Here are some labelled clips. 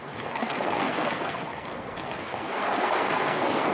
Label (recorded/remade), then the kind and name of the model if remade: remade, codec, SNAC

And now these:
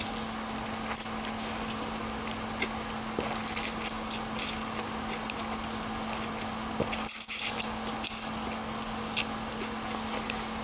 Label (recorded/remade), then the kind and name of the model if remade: recorded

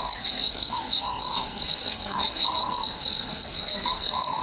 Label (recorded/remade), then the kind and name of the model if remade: remade, codec, SNAC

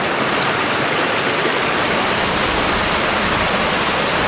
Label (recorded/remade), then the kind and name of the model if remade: recorded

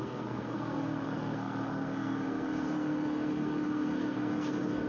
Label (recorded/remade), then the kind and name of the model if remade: remade, codec, SNAC